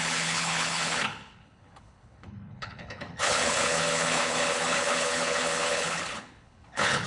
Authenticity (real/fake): fake